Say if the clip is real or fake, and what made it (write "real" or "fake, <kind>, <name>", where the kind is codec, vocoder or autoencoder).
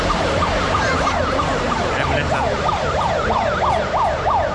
fake, vocoder, BigVGAN v2